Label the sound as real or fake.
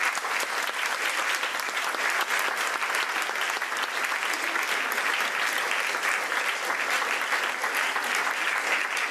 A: real